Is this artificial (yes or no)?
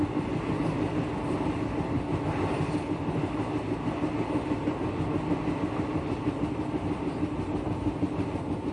no